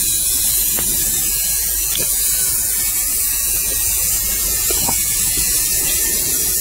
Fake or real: fake